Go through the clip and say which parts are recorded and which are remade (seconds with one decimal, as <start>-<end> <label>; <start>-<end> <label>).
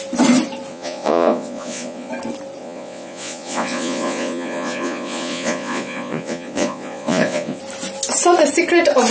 0.0-0.7 recorded; 0.7-2.1 remade; 2.1-2.6 recorded; 2.6-7.6 remade; 7.6-9.1 recorded